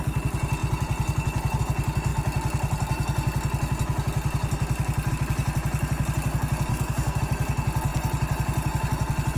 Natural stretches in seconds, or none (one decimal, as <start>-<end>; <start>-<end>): 0.0-6.7; 7.2-9.4